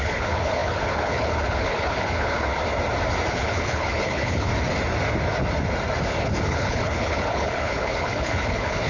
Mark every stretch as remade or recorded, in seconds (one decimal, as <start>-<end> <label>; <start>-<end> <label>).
0.0-2.6 remade; 2.6-3.3 recorded; 3.3-4.5 remade; 4.5-6.2 recorded; 6.2-8.9 remade